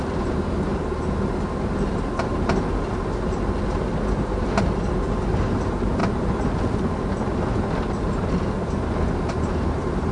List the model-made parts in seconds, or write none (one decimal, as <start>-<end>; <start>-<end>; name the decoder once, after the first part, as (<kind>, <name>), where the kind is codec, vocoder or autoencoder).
0.0-0.7 (vocoder, BigVGAN v2); 4.1-6.0; 9.3-10.1